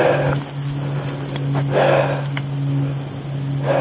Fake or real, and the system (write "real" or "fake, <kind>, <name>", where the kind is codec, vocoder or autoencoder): real